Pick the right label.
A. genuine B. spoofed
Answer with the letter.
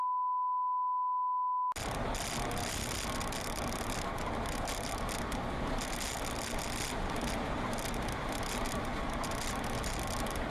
A